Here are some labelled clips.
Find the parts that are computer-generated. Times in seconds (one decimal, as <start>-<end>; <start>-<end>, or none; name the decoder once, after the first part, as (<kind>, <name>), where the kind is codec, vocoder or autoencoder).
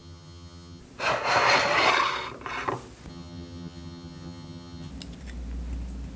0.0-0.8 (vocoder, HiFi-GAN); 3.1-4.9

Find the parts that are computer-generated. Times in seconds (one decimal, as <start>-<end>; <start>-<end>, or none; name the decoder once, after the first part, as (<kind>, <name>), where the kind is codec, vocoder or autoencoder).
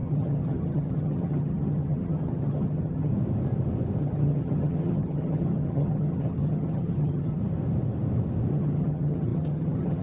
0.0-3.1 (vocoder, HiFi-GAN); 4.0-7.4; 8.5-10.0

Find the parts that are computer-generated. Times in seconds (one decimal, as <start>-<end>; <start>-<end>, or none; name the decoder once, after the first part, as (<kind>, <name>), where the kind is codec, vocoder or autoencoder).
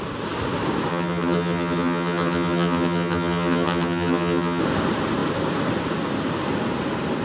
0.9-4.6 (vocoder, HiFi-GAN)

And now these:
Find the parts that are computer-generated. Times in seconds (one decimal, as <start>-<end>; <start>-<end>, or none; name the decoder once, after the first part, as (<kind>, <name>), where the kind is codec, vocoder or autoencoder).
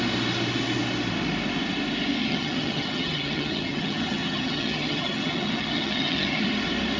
2.2-6.4 (vocoder, HiFi-GAN)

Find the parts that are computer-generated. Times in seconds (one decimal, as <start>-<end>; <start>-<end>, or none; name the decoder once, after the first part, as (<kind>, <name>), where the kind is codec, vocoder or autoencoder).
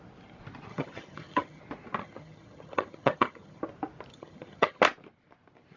0.7-1.6 (vocoder, HiFi-GAN); 2.0-3.6; 4.1-4.8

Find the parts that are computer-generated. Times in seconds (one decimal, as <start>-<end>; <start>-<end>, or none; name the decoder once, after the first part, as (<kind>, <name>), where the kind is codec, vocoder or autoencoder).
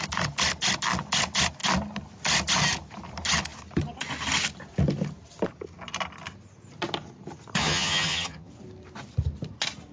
7.6-8.5 (vocoder, HiFi-GAN)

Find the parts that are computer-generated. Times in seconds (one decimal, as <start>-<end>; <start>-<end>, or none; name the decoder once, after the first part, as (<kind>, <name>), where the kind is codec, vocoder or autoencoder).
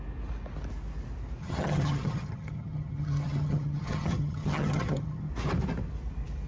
1.4-5.3 (vocoder, HiFi-GAN)